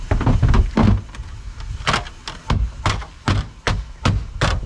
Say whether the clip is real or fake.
real